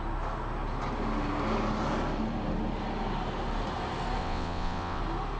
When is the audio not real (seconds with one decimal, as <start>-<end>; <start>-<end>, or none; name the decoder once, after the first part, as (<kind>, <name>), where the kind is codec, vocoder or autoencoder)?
4.2-5.0 (vocoder, WaveNeXt)